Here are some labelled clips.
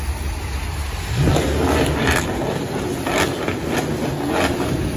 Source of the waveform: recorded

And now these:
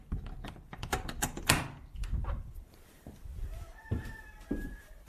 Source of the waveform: remade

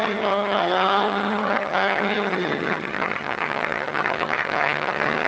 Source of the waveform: remade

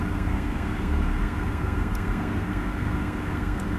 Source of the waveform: remade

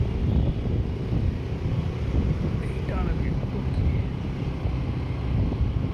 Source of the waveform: recorded